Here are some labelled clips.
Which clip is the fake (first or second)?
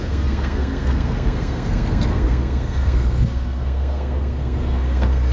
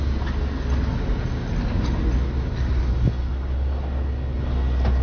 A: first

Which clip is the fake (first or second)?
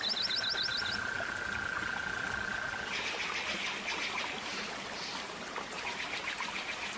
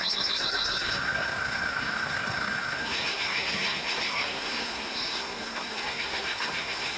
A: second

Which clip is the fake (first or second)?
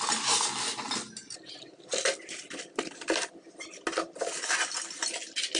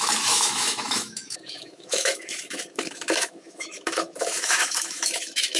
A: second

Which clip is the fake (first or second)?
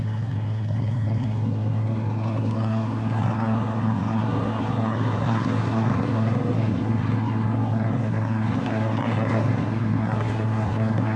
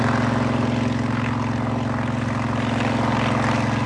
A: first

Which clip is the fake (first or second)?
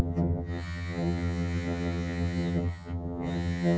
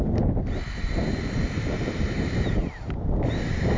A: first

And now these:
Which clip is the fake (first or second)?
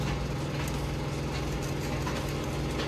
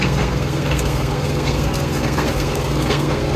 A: second